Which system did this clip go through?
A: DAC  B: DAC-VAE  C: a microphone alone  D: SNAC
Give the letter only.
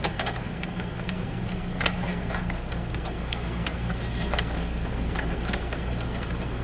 D